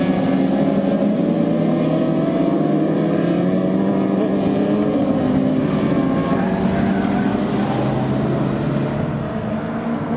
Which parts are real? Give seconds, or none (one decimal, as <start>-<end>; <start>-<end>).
0.0-9.2